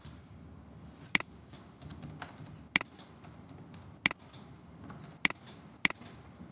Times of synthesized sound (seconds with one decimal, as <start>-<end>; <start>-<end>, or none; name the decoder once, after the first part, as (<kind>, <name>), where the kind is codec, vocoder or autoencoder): none